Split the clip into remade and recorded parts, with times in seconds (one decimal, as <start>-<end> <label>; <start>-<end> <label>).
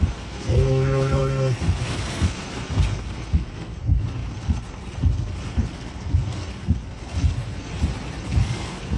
0.0-7.7 remade; 7.7-8.2 recorded; 8.2-9.0 remade